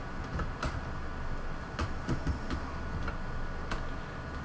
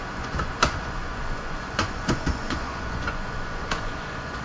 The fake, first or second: second